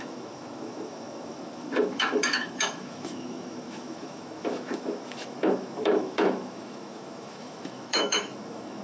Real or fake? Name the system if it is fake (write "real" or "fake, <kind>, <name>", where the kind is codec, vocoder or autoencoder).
fake, autoencoder, DAC-VAE